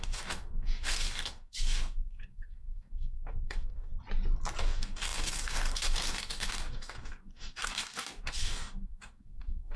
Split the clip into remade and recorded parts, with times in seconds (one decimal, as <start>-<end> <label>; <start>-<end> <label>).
0.0-3.9 remade; 3.9-4.6 recorded; 4.6-9.8 remade